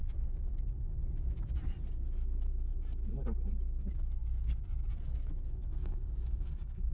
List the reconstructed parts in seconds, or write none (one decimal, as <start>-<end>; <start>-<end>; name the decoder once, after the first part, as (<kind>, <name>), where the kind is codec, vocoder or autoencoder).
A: 5.8-6.9 (codec, DAC)